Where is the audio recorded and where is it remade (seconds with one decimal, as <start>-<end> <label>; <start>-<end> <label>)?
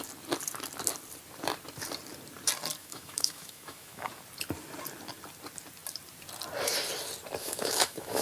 0.0-2.8 recorded; 2.8-4.1 remade; 4.1-7.4 recorded; 7.4-8.2 remade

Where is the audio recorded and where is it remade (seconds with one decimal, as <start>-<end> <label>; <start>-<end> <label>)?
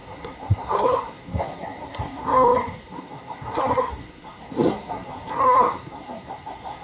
0.0-6.8 remade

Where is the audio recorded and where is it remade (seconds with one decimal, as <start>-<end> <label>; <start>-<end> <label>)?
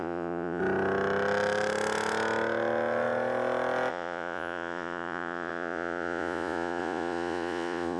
0.0-0.6 remade; 0.6-3.9 recorded; 3.9-8.0 remade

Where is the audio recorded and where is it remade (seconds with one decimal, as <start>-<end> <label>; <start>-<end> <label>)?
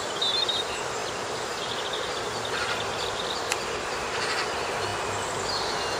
0.0-6.0 recorded